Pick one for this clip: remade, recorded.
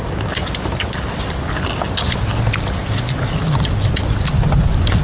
recorded